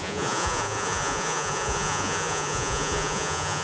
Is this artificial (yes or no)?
yes